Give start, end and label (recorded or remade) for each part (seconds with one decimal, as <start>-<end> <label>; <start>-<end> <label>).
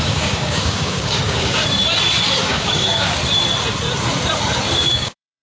0.0-1.6 remade; 1.6-2.4 recorded; 2.4-3.2 remade; 3.2-4.8 recorded; 4.8-5.4 remade